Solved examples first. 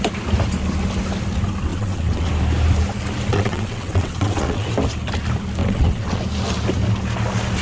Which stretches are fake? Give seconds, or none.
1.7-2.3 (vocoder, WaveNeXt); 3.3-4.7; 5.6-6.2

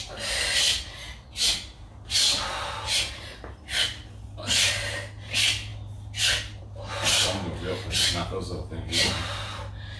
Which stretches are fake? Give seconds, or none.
none

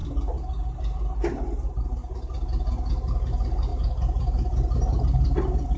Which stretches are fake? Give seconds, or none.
none

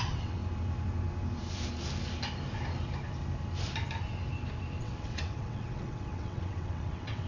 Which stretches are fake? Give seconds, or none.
0.0-0.4 (vocoder, WaveNeXt); 4.8-7.3

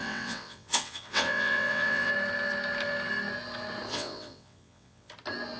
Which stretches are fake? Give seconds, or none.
0.0-2.1 (vocoder, WaveNeXt); 3.9-5.1

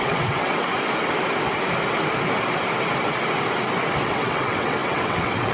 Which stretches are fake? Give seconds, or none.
0.0-0.7 (vocoder, WaveNeXt); 4.0-5.5

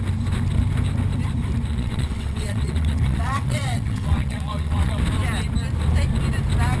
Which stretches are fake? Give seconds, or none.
1.7-5.0 (vocoder, WaveNeXt)